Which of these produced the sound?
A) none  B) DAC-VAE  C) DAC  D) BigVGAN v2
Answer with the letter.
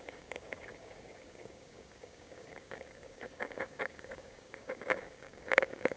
C